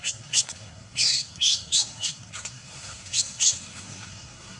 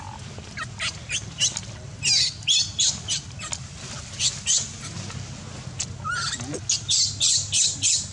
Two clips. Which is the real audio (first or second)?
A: second